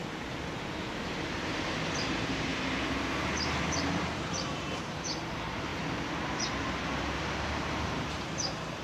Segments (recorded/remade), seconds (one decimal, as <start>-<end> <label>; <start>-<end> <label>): 0.0-1.2 recorded; 1.2-5.7 remade; 5.7-6.6 recorded; 6.6-8.8 remade